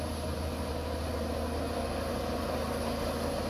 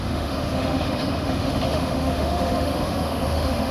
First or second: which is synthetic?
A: second